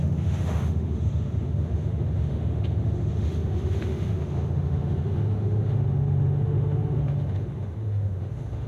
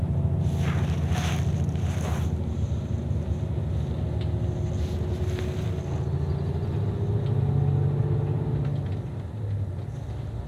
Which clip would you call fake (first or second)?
first